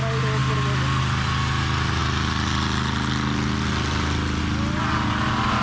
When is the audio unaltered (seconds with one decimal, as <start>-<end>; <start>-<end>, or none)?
0.0-5.6